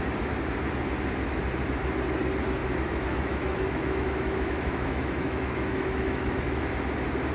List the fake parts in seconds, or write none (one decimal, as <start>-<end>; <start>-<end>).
2.6-6.7